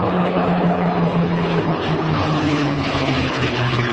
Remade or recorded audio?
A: remade